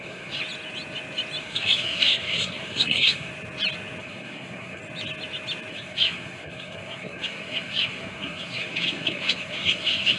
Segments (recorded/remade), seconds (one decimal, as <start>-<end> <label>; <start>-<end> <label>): 0.0-0.4 remade; 0.4-1.4 recorded; 1.4-3.3 remade; 3.3-4.0 recorded; 4.0-4.8 remade; 4.8-5.7 recorded; 5.7-10.2 remade